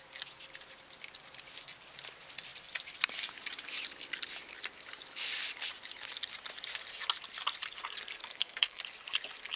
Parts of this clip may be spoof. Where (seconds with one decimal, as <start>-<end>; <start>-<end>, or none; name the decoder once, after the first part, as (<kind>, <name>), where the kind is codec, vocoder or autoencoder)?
8.2-8.8 (codec, SNAC)